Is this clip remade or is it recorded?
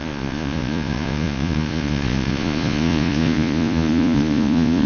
remade